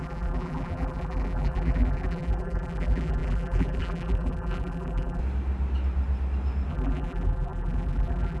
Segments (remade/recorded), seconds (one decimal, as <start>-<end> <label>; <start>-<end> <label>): 0.0-5.2 remade; 5.2-6.7 recorded; 6.7-8.4 remade

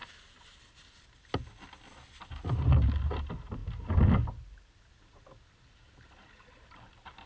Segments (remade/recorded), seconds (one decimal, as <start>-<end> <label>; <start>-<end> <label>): 0.0-7.3 recorded